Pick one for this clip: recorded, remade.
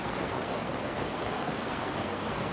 remade